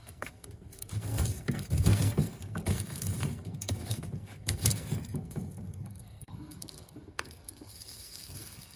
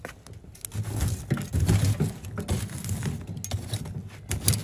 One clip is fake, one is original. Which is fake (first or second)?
first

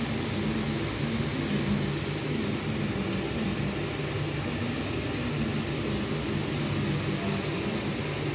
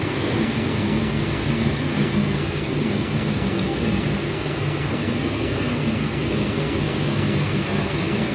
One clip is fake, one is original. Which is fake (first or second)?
second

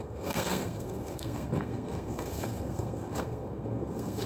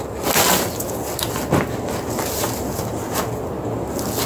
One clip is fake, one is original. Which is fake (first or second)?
first